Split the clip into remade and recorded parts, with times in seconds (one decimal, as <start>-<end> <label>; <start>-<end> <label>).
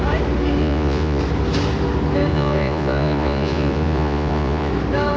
0.0-0.6 recorded; 0.6-1.2 remade; 1.2-2.3 recorded; 2.3-4.7 remade; 4.7-5.2 recorded